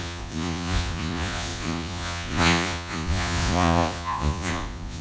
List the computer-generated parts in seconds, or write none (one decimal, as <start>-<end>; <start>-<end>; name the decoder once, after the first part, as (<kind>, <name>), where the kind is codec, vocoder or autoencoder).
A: 0.0-5.0 (vocoder, Vocos)